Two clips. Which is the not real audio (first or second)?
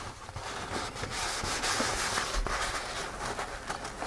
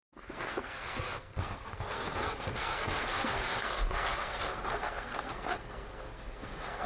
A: second